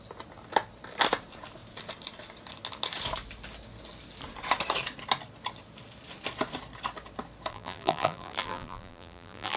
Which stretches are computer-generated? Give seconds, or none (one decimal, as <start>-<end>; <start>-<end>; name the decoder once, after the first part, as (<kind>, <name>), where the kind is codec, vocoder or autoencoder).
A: 7.5-9.6 (vocoder, BigVGAN v2)